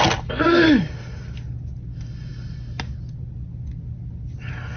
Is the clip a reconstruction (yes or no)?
no